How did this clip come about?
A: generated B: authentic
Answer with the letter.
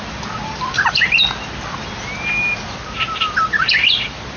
B